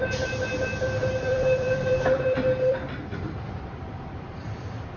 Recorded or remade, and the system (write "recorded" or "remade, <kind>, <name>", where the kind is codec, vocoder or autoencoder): remade, vocoder, BigVGAN v2